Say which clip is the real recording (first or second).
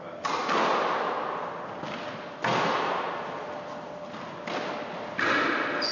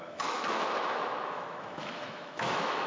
first